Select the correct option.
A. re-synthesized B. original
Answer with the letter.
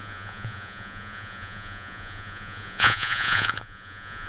A